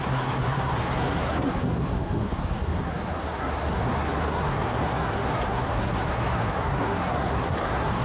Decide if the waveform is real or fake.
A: fake